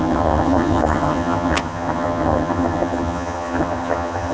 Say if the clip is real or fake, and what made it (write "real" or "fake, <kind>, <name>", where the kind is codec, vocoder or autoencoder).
fake, vocoder, HiFi-GAN